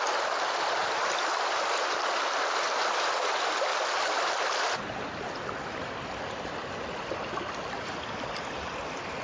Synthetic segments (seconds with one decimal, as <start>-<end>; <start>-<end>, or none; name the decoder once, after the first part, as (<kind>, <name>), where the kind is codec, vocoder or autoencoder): none